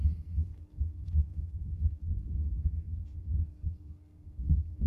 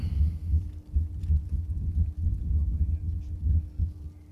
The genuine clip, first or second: second